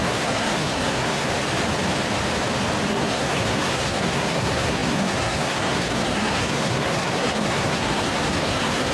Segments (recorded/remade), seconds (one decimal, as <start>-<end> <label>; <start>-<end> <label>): 0.0-1.3 remade; 1.3-2.9 recorded; 2.9-8.9 remade